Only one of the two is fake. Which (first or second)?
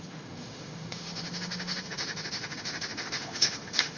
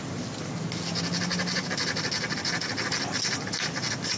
first